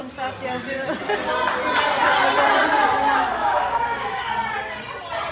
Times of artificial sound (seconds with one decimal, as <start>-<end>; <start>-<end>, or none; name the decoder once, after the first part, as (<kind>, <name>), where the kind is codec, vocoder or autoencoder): 3.3-4.3 (codec, DAC)